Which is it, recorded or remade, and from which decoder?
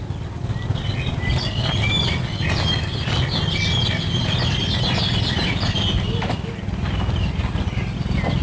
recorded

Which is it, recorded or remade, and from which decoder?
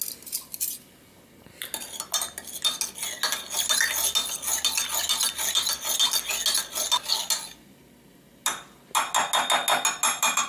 recorded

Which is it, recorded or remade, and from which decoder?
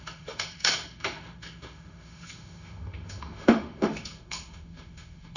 remade, autoencoder, DAC-VAE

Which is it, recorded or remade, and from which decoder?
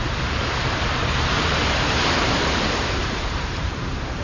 remade, vocoder, BigVGAN v2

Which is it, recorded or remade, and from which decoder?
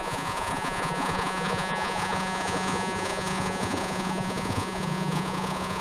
remade, vocoder, Vocos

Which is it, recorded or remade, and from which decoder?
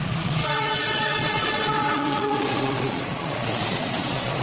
remade, vocoder, Vocos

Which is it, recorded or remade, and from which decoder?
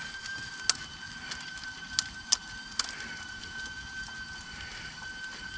recorded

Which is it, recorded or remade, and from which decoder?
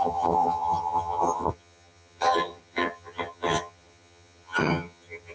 remade, vocoder, HiFi-GAN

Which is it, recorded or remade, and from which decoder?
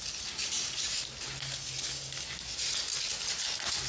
recorded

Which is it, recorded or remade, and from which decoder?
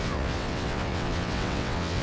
remade, vocoder, WaveNeXt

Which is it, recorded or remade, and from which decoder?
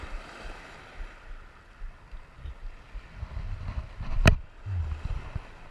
recorded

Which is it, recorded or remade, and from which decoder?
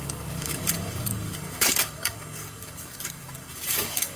remade, codec, DAC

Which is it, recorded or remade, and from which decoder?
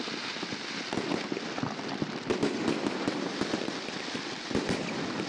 remade, vocoder, BigVGAN v2